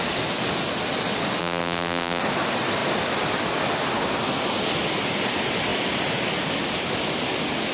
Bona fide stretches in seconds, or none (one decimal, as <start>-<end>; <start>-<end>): 0.0-1.4; 2.2-7.7